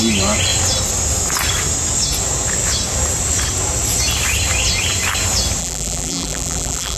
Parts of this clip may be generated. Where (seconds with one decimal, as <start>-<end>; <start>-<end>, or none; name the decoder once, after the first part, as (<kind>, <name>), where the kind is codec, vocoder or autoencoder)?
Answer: 5.6-7.0 (vocoder, BigVGAN v2)